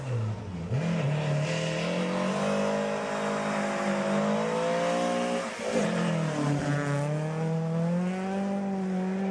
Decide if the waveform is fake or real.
real